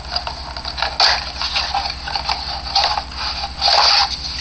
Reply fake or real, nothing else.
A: real